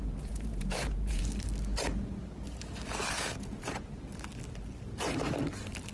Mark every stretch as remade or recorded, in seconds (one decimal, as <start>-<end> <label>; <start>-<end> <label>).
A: 0.0-1.2 remade; 1.2-3.0 recorded; 3.0-3.9 remade; 3.9-5.9 recorded